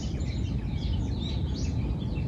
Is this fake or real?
real